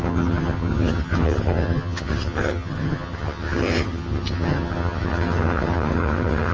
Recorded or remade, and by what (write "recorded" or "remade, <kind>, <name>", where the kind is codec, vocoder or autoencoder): remade, vocoder, HiFi-GAN